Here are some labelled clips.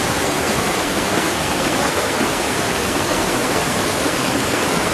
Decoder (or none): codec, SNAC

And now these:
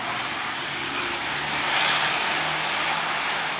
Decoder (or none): none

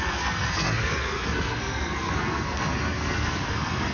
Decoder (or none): codec, SNAC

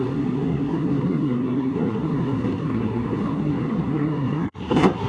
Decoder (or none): codec, SNAC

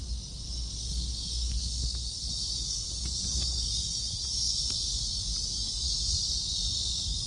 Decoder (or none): none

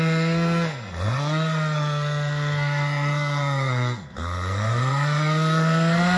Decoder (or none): codec, SNAC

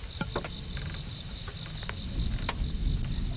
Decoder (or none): none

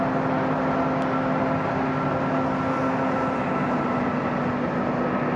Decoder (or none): none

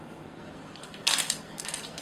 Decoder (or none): codec, SNAC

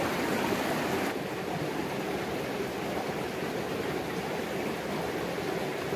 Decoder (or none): none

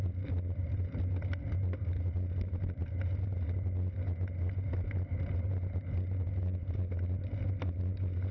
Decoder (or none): none